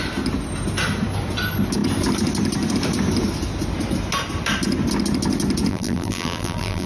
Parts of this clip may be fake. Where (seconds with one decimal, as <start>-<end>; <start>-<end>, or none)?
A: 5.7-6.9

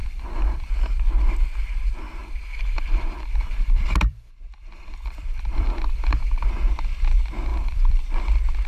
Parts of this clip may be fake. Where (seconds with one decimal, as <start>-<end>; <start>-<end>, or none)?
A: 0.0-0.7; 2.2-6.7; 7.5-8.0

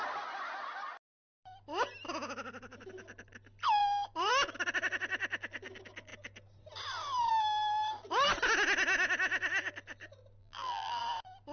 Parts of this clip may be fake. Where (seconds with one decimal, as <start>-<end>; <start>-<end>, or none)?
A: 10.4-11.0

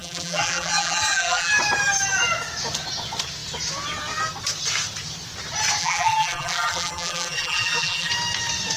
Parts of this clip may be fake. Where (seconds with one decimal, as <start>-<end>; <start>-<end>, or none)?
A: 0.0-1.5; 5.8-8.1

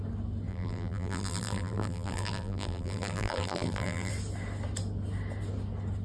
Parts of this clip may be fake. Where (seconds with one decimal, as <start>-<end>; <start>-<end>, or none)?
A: 0.5-4.1

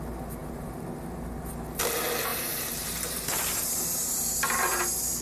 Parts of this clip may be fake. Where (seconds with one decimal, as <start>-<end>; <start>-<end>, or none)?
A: 2.3-4.6

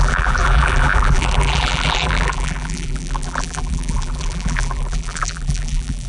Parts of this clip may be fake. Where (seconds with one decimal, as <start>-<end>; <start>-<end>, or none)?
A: 0.0-6.1

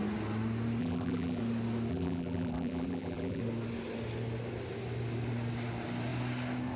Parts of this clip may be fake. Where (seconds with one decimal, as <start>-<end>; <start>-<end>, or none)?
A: 0.8-1.4; 1.9-3.4